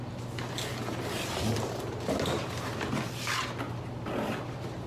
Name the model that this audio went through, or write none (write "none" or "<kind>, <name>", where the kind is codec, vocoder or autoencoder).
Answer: none